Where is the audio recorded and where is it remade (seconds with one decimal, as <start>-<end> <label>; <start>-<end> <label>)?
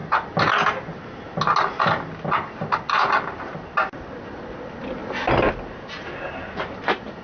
0.0-7.2 recorded